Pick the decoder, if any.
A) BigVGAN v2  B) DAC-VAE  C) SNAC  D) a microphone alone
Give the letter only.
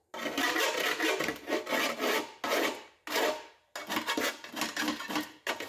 D